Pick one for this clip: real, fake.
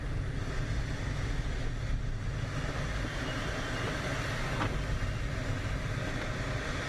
real